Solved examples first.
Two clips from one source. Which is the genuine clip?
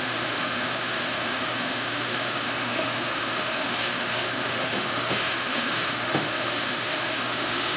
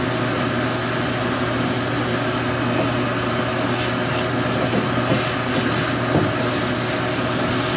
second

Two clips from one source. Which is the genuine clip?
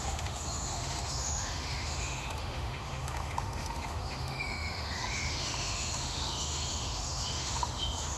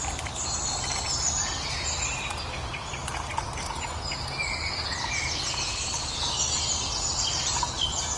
second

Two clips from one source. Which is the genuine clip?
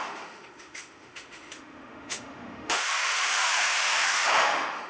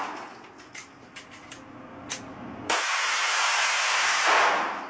second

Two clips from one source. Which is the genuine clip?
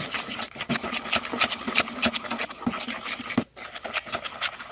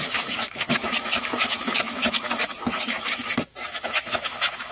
first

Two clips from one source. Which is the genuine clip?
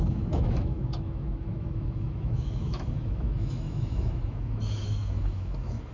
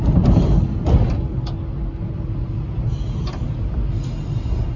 second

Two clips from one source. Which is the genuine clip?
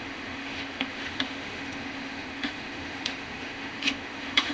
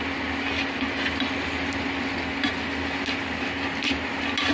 second